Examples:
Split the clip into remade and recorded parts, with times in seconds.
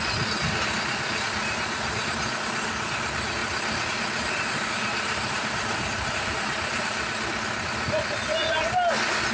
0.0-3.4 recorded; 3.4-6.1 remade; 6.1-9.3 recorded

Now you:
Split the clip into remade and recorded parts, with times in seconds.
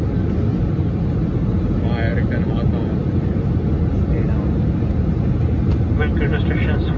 0.0-7.0 recorded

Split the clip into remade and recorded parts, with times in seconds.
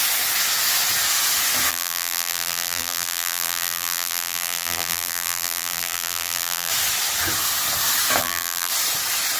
0.0-1.7 recorded; 1.7-6.7 remade; 6.7-8.2 recorded; 8.2-8.7 remade; 8.7-9.4 recorded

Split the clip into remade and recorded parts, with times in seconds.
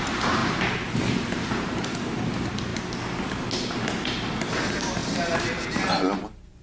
0.0-2.7 remade; 2.7-4.4 recorded; 4.4-6.6 remade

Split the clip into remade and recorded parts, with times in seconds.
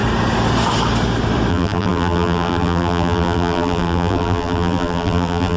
0.0-1.5 recorded; 1.5-5.6 remade